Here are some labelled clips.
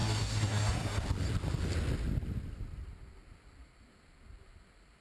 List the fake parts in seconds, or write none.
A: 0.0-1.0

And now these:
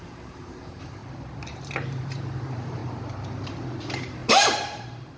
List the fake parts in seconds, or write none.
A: 0.0-1.0; 1.5-2.8; 3.8-5.2

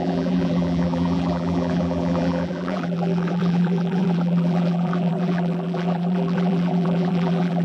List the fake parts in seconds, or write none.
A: 0.0-7.6

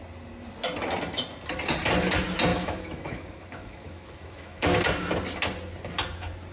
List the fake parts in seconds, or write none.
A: 2.5-4.8

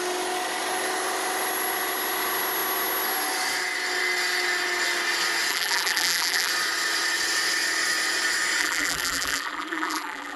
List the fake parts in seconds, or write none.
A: 5.5-6.5; 8.6-10.4

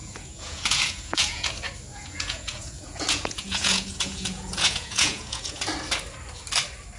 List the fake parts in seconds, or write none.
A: 0.0-1.5; 1.9-5.6